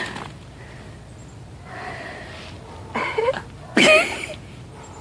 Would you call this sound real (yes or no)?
yes